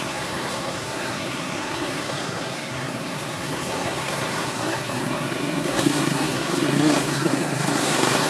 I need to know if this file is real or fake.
fake